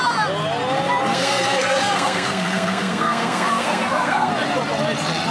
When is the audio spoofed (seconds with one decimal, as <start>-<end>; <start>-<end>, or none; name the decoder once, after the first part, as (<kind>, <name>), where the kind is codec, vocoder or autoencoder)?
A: 1.1-4.3 (codec, SNAC)